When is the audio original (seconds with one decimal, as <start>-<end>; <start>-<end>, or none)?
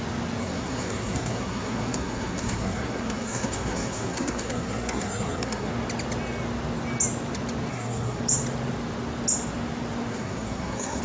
0.0-0.4; 5.7-7.7; 8.2-10.1